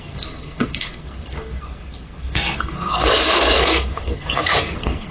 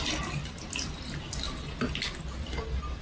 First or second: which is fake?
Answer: first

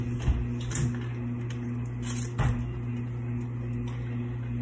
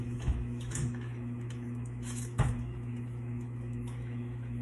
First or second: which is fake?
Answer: second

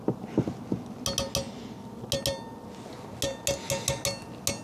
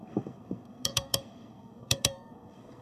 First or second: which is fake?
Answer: second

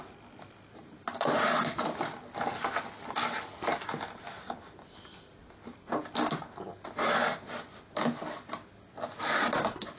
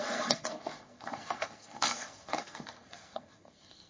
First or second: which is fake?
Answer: second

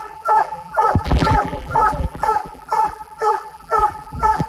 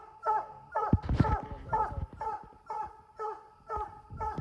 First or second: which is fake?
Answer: first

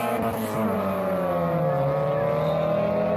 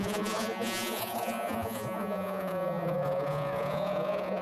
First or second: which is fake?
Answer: second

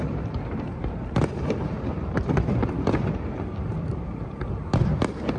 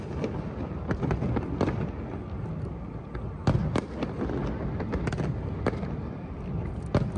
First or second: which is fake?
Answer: first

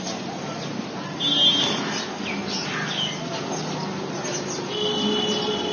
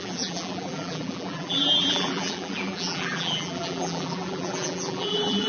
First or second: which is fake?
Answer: second